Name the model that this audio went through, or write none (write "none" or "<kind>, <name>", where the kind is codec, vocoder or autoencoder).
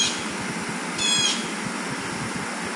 none